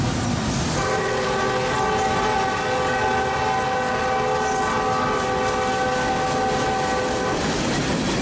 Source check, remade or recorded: recorded